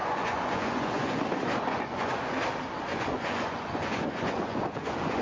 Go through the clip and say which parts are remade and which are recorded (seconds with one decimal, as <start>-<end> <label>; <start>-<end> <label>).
0.0-1.2 remade; 1.2-1.7 recorded; 1.7-2.4 remade; 2.4-2.9 recorded; 2.9-5.2 remade